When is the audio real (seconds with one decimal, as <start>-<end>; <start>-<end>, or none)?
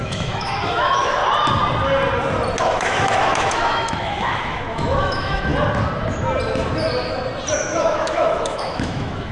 1.2-2.6; 5.5-7.6